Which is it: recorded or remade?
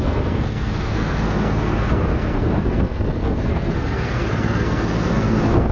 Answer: remade